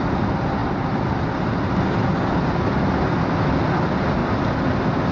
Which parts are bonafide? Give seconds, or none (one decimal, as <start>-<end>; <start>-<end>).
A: 0.0-5.1